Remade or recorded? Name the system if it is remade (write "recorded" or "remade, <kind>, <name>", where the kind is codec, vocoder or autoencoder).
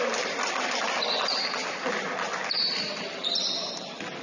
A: recorded